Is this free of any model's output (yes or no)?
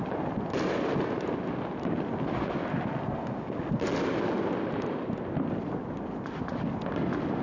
yes